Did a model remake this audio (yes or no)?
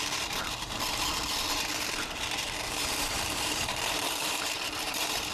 yes